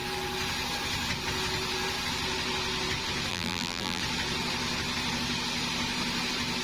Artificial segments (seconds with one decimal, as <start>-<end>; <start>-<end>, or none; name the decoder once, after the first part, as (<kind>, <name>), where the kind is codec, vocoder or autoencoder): 3.3-4.0 (vocoder, BigVGAN v2)